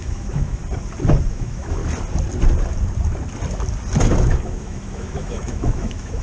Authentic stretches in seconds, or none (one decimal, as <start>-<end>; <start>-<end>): 0.6-1.3; 1.8-4.4